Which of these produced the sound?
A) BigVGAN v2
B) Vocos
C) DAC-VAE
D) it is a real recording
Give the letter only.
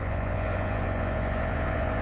B